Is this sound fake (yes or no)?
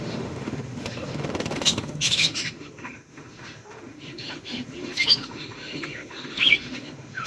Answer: yes